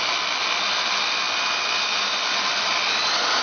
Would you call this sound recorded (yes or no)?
yes